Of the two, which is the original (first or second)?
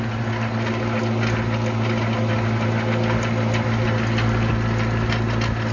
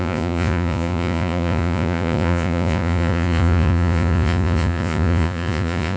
first